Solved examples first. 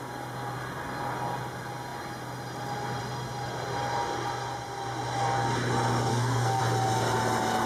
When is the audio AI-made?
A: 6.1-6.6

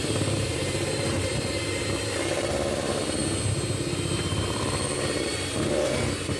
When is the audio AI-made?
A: 0.0-3.2; 4.3-6.4

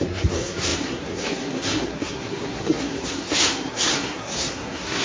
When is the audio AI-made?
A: 0.0-5.0

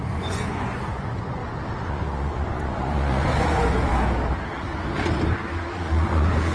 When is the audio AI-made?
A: 0.0-1.4; 1.9-3.9; 5.7-6.5

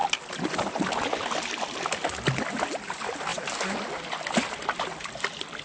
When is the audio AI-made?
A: none

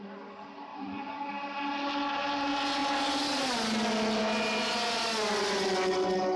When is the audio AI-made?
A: 0.7-1.3

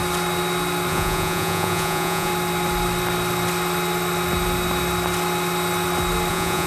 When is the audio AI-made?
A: 0.9-2.3; 6.3-6.7